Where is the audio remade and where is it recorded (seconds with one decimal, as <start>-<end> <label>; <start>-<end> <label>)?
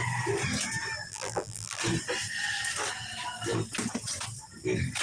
0.0-1.1 recorded; 1.1-1.8 remade; 1.8-5.0 recorded